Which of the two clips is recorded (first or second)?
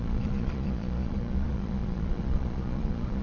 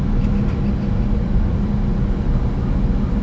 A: second